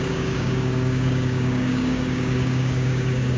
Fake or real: fake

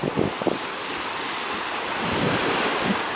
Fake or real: real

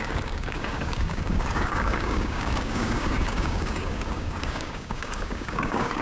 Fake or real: fake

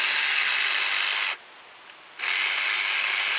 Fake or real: real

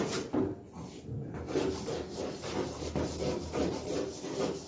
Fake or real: real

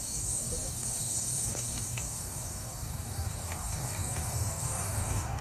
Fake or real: fake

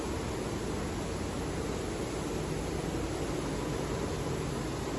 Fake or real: real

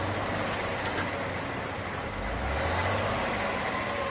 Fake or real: real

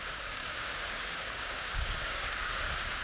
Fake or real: fake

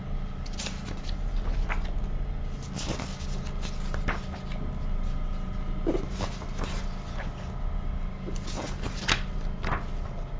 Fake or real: real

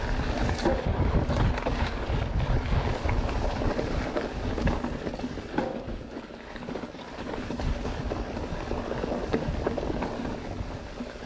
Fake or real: fake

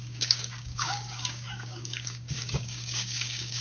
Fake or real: fake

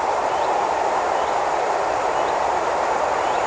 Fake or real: real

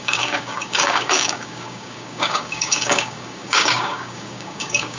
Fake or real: fake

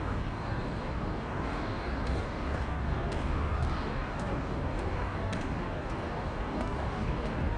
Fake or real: fake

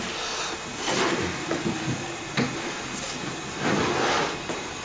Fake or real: real